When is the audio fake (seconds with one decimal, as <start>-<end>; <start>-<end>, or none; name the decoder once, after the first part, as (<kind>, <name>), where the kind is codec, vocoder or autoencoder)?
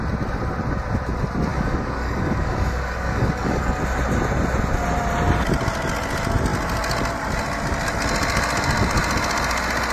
1.5-3.8 (codec, DAC)